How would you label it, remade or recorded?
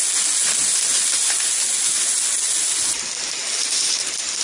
recorded